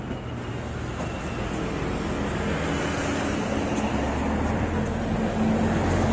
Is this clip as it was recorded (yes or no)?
yes